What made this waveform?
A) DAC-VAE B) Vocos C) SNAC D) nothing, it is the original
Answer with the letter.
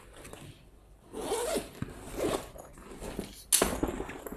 D